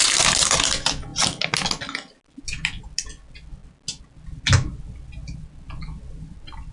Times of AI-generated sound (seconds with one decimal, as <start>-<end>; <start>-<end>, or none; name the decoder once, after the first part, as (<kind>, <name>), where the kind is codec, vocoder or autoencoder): none